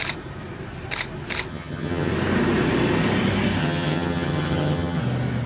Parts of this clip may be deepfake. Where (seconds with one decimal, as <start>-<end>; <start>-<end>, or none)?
1.5-2.1; 3.6-5.0